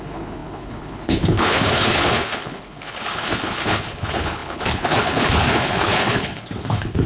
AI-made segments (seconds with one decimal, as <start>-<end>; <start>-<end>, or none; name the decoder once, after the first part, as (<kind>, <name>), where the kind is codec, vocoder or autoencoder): 0.0-7.1 (codec, HILCodec)